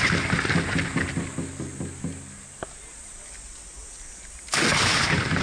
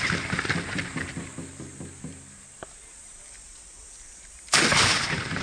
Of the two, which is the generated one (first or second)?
second